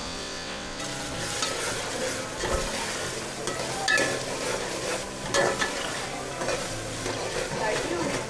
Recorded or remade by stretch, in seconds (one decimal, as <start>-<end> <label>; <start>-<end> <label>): 0.0-0.8 remade; 0.8-8.3 recorded